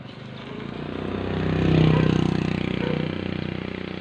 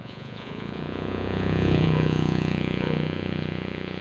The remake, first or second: second